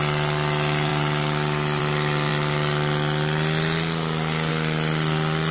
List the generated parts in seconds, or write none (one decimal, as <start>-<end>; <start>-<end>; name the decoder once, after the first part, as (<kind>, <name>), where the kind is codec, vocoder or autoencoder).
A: none